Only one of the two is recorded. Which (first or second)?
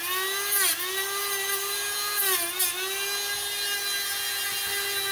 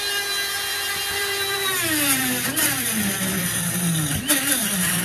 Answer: first